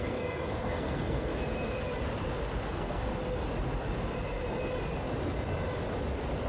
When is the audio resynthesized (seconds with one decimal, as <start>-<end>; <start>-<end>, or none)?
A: 0.0-1.3; 2.7-3.1